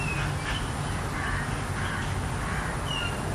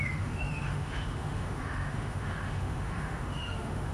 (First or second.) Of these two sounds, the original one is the first